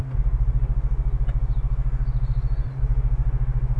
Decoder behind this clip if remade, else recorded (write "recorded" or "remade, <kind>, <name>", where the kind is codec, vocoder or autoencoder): recorded